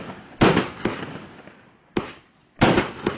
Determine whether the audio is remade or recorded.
recorded